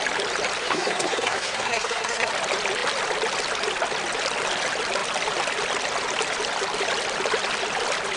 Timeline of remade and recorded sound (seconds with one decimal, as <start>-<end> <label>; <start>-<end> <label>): 0.0-0.6 recorded; 0.6-2.3 remade; 2.3-8.2 recorded